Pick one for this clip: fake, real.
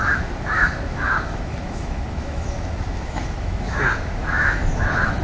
fake